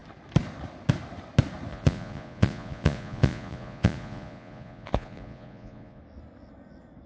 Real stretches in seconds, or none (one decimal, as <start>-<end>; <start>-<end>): 0.0-1.7; 6.0-7.1